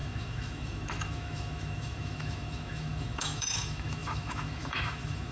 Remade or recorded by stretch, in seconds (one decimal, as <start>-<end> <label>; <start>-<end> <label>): 0.0-5.3 remade

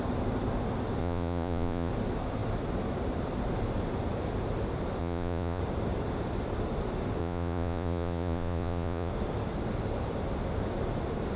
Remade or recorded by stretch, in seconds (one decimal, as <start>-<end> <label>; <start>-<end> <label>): 0.0-1.0 recorded; 1.0-1.9 remade; 1.9-5.0 recorded; 5.0-5.6 remade; 5.6-7.2 recorded; 7.2-9.1 remade; 9.1-11.4 recorded

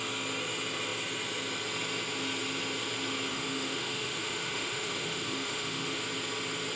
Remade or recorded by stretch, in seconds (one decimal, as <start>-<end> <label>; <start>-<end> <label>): 0.0-3.3 recorded; 3.3-6.0 remade; 6.0-6.8 recorded

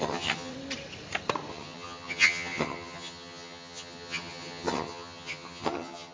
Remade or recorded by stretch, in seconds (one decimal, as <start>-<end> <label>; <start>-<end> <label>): 0.0-0.5 remade; 0.5-1.5 recorded; 1.5-6.1 remade